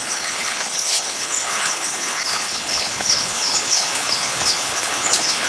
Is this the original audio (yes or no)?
no